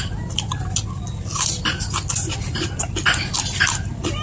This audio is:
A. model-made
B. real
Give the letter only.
B